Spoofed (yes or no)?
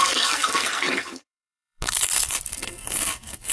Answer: yes